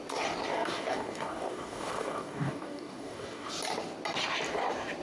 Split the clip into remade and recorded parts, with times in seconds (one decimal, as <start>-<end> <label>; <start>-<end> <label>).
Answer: 0.0-0.5 recorded; 0.5-3.5 remade; 3.5-5.0 recorded